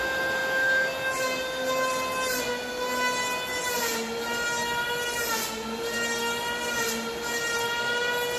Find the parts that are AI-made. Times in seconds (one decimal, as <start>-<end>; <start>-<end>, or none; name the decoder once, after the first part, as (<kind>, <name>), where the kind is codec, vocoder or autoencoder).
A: none